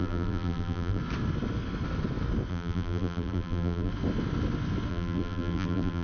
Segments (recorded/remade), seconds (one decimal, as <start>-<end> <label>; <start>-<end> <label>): 0.0-1.0 remade; 1.0-2.5 recorded; 2.5-3.9 remade; 3.9-4.9 recorded; 4.9-6.0 remade